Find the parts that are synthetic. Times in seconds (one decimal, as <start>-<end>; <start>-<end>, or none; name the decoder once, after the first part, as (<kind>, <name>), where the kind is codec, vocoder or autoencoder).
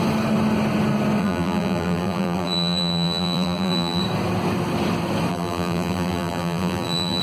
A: 1.2-4.0 (vocoder, BigVGAN v2); 5.3-7.2